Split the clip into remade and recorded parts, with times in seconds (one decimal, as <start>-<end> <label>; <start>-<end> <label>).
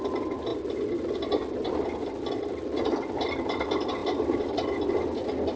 0.0-0.5 recorded; 0.5-2.6 remade; 2.6-5.6 recorded